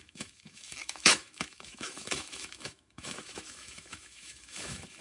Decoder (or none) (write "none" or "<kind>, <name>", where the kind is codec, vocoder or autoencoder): autoencoder, DAC-VAE